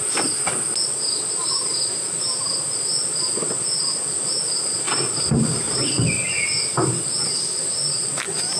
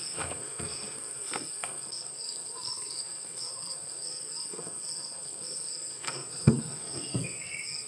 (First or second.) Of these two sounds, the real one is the first